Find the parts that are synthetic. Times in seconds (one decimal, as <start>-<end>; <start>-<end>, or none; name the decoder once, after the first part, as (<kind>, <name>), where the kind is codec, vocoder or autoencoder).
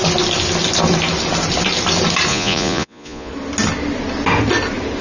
2.3-3.3 (vocoder, Vocos)